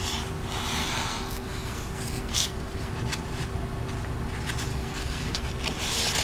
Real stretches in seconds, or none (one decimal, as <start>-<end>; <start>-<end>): 0.0-0.8; 2.9-4.7; 5.5-6.2